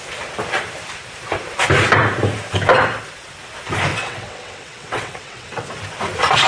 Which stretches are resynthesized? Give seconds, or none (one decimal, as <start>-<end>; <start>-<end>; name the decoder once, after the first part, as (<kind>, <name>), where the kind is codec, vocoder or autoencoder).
3.9-5.7 (vocoder, WaveNeXt)